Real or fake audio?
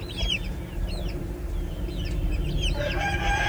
real